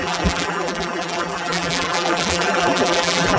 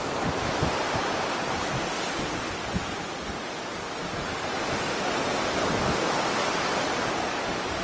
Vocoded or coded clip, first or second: first